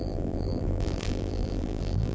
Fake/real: fake